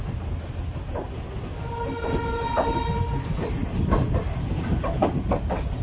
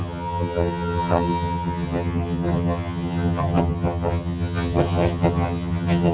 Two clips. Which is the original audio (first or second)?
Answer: first